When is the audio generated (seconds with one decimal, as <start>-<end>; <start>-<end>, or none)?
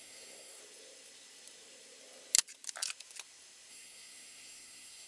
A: 0.0-0.6; 3.7-5.1